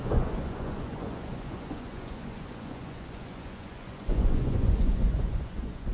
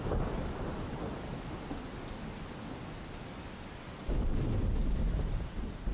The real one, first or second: second